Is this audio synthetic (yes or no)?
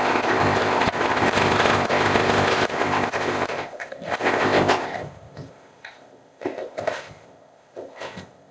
yes